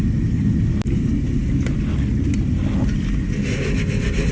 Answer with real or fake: real